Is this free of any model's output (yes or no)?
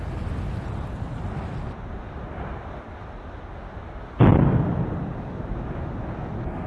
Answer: yes